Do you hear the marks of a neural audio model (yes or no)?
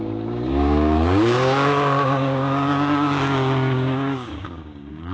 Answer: yes